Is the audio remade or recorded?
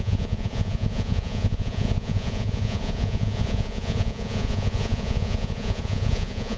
remade